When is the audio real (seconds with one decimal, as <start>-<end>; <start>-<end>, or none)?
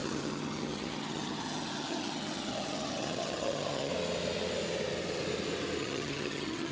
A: 3.9-5.8